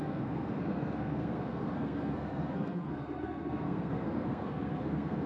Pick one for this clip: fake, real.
fake